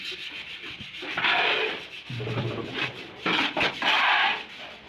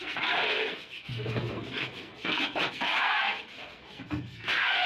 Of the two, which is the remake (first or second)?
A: second